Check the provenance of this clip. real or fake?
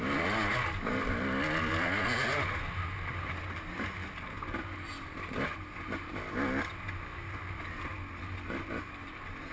real